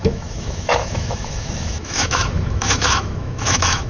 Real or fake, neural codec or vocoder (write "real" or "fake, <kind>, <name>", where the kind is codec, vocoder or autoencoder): fake, autoencoder, DAC-VAE